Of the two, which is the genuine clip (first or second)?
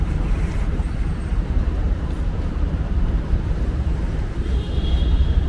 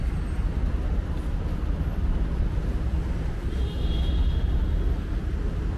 second